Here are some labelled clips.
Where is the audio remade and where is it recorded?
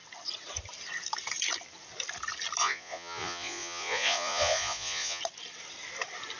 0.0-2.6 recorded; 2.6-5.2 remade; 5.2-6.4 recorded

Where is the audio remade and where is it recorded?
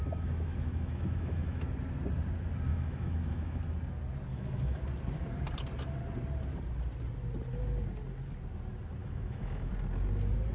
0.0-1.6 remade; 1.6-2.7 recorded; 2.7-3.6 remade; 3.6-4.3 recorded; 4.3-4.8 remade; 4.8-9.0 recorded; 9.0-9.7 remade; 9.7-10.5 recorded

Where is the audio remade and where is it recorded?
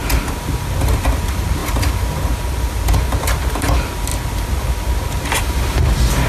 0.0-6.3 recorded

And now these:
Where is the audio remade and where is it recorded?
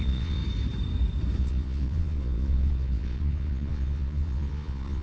0.0-0.4 remade; 0.4-1.4 recorded; 1.4-5.0 remade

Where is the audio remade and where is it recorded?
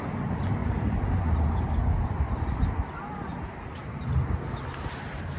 0.0-0.6 recorded; 0.6-1.2 remade; 1.2-3.3 recorded; 3.3-4.0 remade; 4.0-5.4 recorded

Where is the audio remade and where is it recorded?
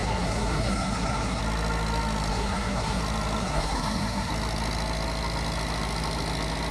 0.0-1.4 remade; 1.4-2.3 recorded; 2.3-3.0 remade; 3.0-3.4 recorded; 3.4-4.3 remade; 4.3-6.7 recorded